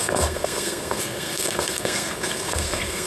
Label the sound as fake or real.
fake